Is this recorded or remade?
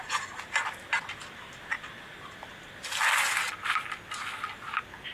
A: recorded